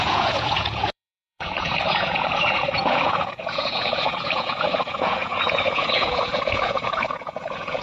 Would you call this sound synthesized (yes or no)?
yes